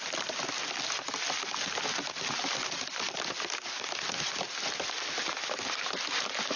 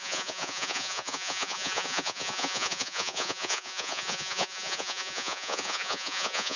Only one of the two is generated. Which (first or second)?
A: second